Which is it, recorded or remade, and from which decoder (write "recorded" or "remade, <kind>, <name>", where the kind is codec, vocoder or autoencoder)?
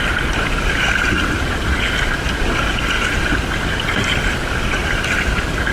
recorded